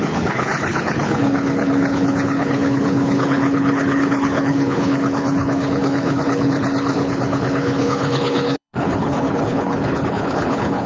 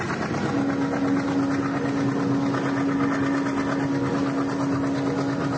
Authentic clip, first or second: second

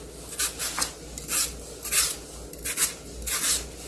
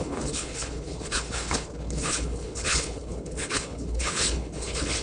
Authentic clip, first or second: first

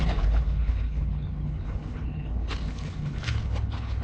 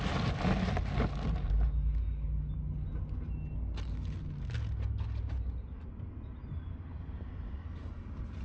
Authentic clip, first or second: second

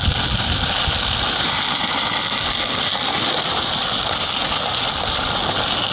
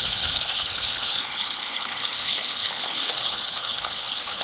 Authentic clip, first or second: first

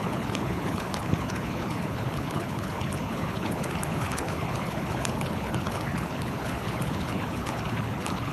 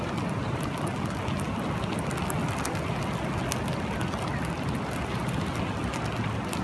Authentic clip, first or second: second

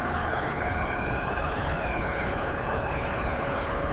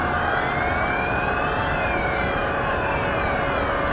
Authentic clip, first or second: second